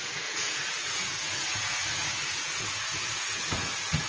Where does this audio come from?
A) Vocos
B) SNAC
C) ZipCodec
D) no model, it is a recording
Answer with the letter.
A